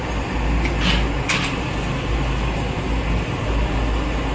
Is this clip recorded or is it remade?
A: recorded